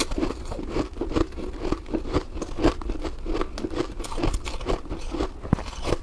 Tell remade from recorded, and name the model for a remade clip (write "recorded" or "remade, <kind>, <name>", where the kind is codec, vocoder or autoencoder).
recorded